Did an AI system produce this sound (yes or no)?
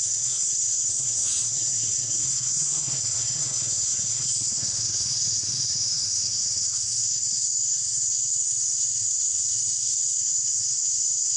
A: yes